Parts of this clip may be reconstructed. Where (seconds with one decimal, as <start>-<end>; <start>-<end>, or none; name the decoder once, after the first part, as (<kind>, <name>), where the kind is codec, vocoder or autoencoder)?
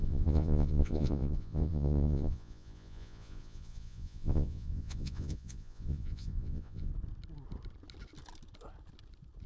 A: 0.0-6.9 (vocoder, Vocos)